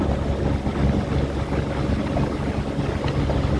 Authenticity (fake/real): real